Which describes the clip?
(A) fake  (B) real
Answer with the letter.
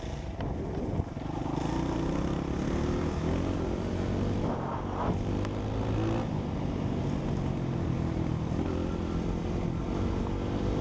B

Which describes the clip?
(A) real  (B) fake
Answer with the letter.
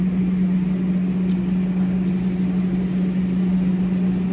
A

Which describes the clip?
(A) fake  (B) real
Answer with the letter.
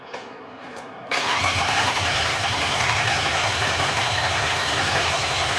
A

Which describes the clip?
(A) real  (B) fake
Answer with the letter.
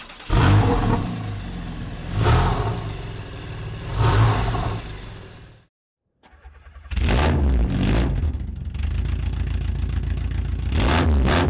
A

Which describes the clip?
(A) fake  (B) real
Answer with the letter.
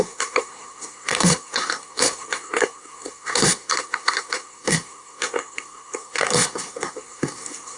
A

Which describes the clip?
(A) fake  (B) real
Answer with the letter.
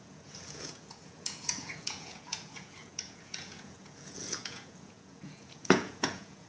A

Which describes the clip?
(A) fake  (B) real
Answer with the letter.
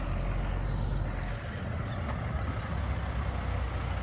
B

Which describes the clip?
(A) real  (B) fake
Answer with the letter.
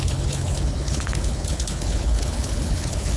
B